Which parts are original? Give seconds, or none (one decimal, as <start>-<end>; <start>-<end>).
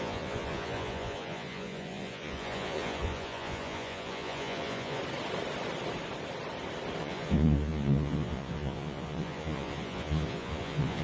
5.0-7.0